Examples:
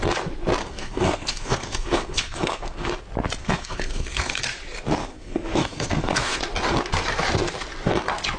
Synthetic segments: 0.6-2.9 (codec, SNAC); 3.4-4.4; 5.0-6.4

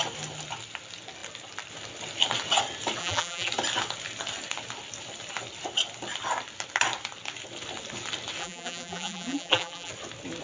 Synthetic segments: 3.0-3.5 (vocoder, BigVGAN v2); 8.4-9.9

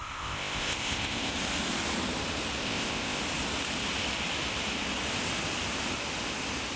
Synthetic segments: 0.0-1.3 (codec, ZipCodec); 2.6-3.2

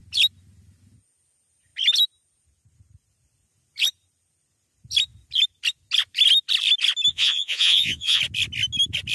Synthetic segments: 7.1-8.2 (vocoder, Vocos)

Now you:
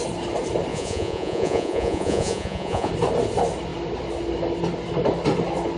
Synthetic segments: 0.7-2.9 (vocoder, Vocos)

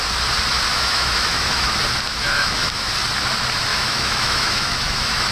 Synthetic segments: 0.7-1.7 (autoencoder, DAC-VAE); 2.1-2.9; 3.7-5.3